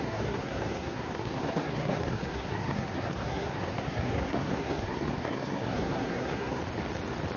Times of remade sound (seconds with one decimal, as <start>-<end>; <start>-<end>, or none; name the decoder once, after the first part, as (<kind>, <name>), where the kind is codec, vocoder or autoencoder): 0.0-6.6 (codec, SNAC)